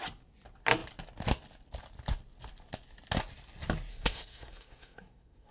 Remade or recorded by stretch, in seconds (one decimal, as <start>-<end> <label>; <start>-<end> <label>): 0.0-3.9 recorded; 3.9-5.5 remade